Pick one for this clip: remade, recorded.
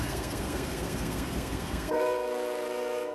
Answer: remade